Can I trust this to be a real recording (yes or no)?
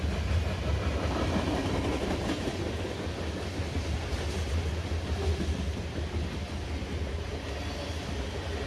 yes